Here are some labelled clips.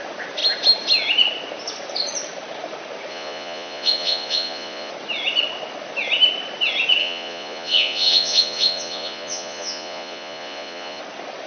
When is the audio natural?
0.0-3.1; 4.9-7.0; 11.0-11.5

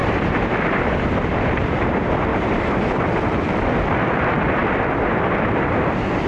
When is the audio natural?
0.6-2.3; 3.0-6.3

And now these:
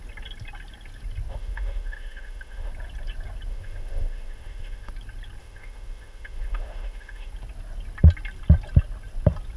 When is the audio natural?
0.0-1.3; 2.7-3.5; 4.9-5.4; 7.3-9.6